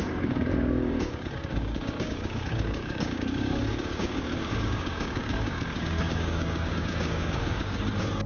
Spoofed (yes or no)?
yes